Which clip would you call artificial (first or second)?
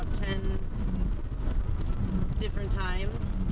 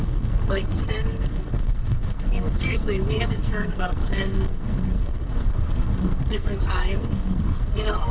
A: second